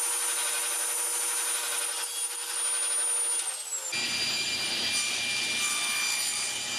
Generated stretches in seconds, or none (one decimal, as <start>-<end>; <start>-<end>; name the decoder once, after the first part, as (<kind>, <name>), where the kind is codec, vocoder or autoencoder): none

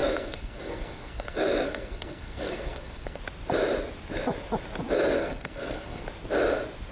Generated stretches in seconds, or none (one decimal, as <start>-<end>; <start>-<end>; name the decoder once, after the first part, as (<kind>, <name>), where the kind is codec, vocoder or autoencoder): 0.0-3.2 (codec, SNAC); 5.2-6.0